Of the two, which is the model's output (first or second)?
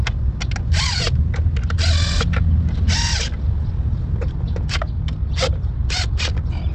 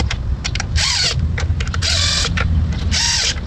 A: second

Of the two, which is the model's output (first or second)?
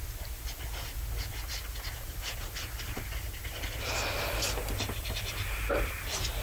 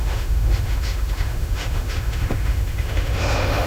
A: second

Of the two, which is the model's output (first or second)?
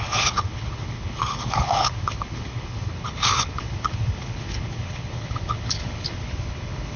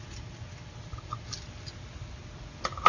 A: first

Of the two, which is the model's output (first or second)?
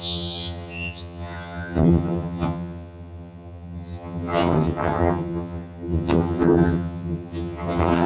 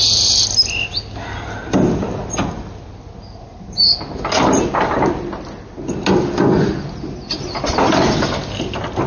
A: first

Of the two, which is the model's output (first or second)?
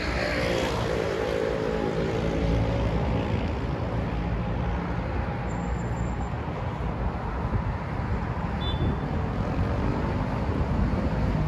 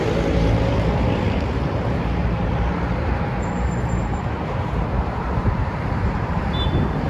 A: second